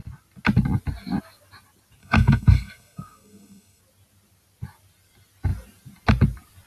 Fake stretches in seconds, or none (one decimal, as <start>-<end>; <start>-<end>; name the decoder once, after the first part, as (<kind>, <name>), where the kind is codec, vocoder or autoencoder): 2.0-3.8 (codec, SNAC)